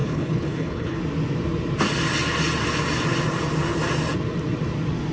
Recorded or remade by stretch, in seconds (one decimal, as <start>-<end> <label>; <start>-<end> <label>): 0.0-1.0 remade; 1.0-5.1 recorded